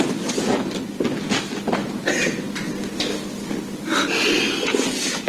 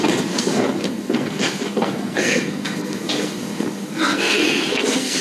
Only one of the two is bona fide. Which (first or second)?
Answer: first